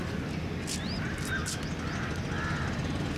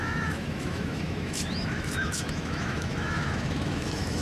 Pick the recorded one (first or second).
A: first